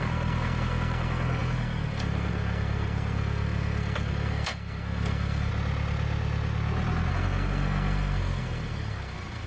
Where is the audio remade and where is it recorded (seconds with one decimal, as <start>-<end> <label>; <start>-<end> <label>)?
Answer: 0.0-5.5 remade; 5.5-7.1 recorded; 7.1-9.5 remade